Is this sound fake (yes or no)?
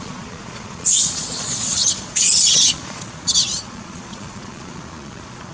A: yes